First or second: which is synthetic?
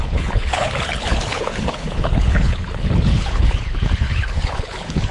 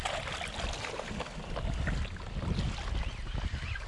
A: first